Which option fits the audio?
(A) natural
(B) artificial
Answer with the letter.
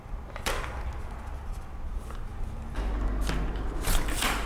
A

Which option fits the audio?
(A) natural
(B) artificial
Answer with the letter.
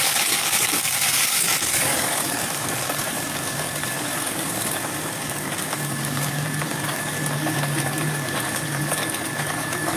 B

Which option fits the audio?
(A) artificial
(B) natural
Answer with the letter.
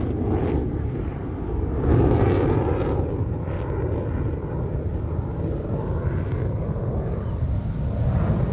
B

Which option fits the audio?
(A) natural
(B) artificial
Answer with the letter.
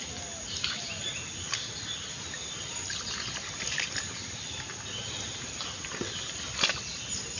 A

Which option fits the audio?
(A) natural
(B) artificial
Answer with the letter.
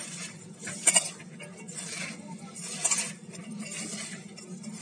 A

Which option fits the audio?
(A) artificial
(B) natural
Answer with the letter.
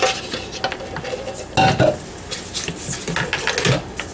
B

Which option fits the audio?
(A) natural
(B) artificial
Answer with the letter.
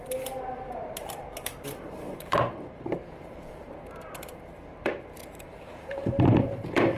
B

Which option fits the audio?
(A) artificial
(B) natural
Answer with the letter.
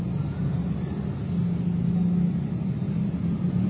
B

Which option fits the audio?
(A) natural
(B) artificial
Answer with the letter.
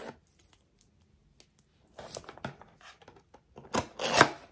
A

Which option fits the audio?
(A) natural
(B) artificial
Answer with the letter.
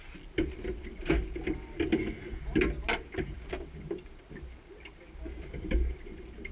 A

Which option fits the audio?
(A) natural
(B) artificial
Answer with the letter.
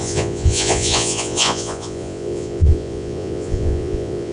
B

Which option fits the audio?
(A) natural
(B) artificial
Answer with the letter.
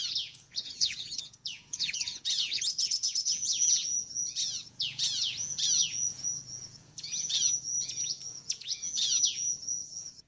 B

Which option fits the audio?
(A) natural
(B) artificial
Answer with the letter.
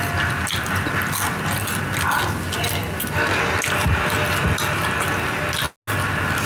A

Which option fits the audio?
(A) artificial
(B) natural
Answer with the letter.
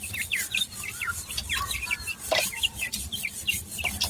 B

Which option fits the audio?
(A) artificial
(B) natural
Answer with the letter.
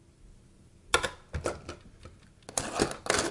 B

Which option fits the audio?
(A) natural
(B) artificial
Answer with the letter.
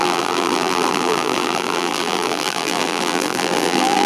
B